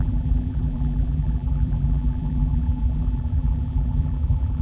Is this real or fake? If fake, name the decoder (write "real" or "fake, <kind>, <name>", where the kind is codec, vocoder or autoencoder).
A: fake, vocoder, BigVGAN v2